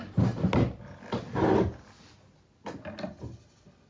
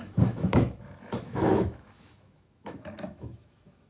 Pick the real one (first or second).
first